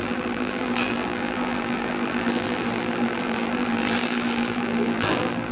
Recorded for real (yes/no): no